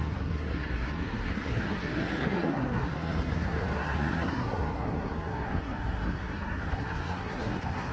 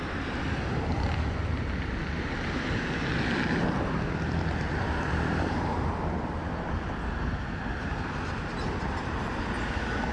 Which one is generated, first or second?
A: first